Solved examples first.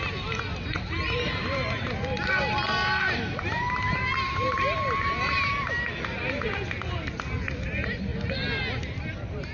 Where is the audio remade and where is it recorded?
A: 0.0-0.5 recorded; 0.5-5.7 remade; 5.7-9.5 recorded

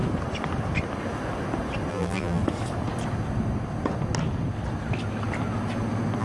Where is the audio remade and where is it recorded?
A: 0.0-1.9 recorded; 1.9-2.4 remade; 2.4-6.2 recorded

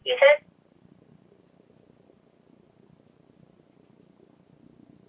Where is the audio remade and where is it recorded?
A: 0.0-1.4 remade; 1.4-5.1 recorded